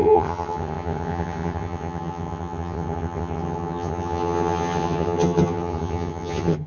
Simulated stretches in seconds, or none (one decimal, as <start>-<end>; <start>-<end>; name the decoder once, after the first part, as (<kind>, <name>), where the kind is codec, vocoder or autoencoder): 0.0-6.7 (vocoder, HiFi-GAN)